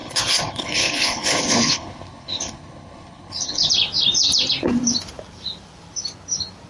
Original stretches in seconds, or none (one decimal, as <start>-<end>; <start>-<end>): 3.7-6.7